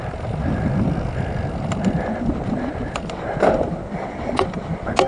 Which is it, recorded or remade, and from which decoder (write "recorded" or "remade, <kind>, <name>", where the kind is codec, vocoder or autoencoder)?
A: recorded